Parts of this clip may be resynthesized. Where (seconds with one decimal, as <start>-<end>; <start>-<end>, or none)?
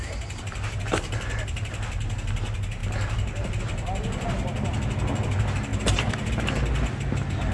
5.7-6.3